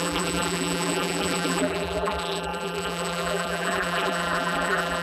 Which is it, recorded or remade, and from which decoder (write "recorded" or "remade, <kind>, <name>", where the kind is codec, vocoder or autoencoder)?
remade, vocoder, BigVGAN v2